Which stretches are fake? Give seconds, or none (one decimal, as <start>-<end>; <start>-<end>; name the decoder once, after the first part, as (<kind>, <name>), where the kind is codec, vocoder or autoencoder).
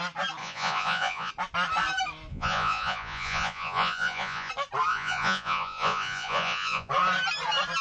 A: 0.4-1.3 (vocoder, Vocos); 2.3-4.5; 4.9-6.9